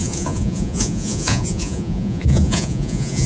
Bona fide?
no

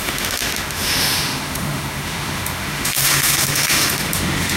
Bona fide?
no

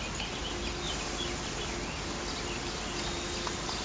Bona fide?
yes